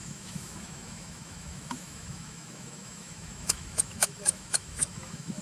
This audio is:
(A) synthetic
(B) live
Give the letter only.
A